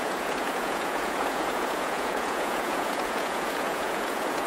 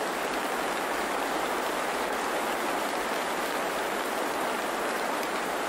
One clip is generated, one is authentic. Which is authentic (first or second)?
second